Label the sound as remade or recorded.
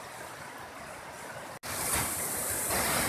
recorded